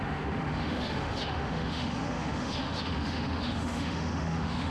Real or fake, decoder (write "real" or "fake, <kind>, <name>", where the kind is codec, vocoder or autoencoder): fake, autoencoder, DAC-VAE